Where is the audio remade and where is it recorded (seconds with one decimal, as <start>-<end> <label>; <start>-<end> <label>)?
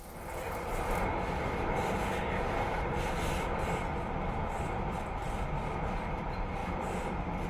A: 0.0-7.5 recorded